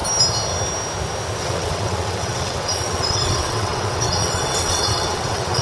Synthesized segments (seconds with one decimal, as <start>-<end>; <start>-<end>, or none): 1.4-5.6